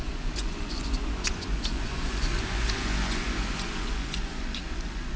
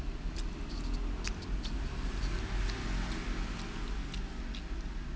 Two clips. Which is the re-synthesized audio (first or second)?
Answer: first